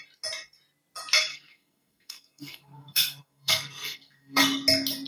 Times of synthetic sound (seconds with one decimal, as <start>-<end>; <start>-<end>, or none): 1.3-4.4